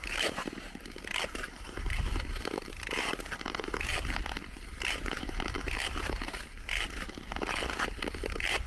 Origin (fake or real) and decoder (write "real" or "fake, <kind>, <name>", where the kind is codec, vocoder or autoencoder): fake, vocoder, BigVGAN v2